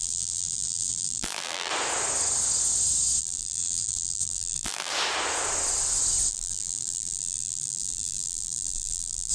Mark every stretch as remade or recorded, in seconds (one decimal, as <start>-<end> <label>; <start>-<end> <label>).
0.0-1.7 remade; 1.7-3.2 recorded; 3.2-4.9 remade; 4.9-6.3 recorded; 6.3-9.3 remade